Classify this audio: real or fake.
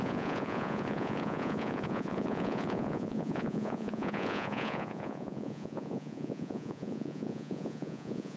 fake